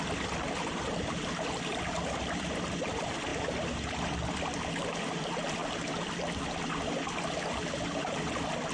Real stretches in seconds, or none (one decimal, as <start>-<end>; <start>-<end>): 0.0-8.7